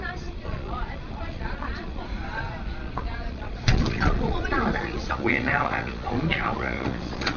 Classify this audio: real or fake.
fake